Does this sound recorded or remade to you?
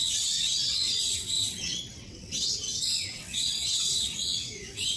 remade